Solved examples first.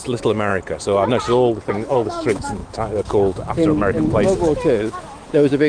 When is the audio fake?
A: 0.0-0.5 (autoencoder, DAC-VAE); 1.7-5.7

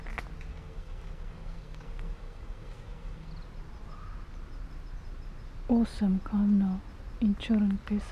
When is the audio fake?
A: 0.5-3.3 (codec, SNAC)

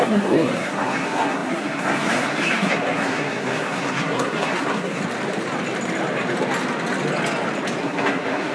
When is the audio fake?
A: 0.0-5.0 (codec, SNAC); 7.8-8.5

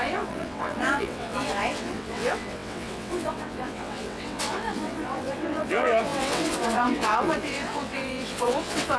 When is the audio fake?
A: 0.0-9.0 (vocoder, WaveNeXt)